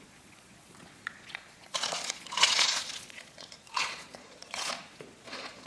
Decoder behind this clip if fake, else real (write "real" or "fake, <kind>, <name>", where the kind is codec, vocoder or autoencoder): fake, vocoder, Vocos